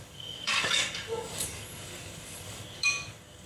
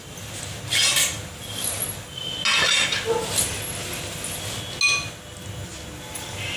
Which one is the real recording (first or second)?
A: second